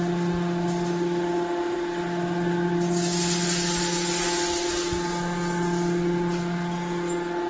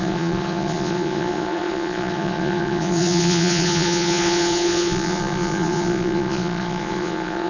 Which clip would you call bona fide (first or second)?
first